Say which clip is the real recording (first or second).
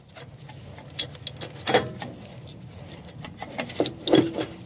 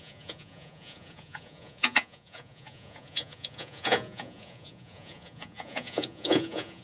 first